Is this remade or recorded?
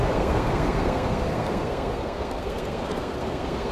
remade